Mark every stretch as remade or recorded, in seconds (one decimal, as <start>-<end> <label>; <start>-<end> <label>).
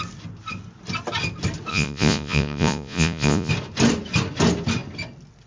0.0-1.7 recorded; 1.7-3.5 remade; 3.5-5.5 recorded